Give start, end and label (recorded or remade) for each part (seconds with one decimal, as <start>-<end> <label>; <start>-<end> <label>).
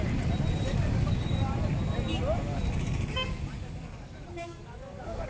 0.0-0.7 recorded; 0.7-1.5 remade; 1.5-2.5 recorded; 2.5-5.3 remade